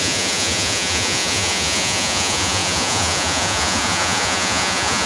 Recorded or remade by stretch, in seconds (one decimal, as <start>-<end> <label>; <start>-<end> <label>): 0.0-5.1 remade